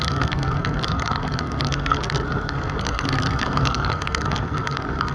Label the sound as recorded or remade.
remade